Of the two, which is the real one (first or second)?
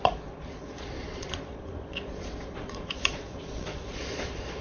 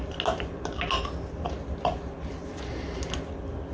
second